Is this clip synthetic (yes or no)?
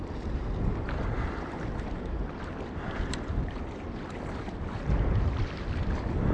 no